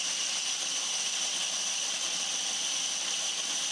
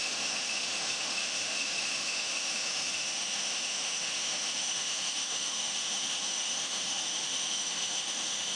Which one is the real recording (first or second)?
first